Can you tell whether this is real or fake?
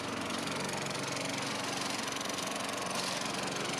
real